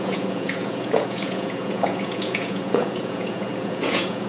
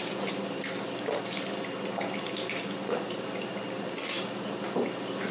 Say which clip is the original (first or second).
second